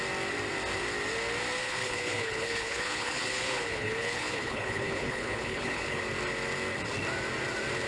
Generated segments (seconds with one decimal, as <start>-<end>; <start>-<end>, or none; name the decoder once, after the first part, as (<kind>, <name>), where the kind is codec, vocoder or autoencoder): 1.6-6.0 (codec, HILCodec)